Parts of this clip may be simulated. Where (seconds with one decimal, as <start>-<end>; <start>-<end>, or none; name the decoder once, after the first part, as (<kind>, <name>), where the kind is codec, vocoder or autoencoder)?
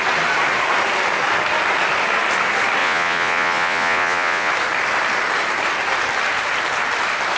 2.8-4.5 (vocoder, Vocos)